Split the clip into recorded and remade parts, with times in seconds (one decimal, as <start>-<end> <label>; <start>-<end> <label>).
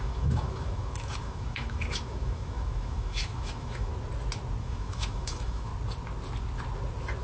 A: 0.0-3.9 remade; 3.9-4.6 recorded; 4.6-5.7 remade; 5.7-7.2 recorded